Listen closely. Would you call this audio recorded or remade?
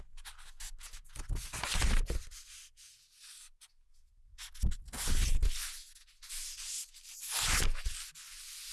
recorded